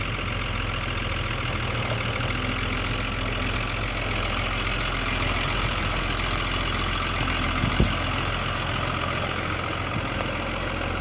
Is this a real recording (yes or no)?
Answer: yes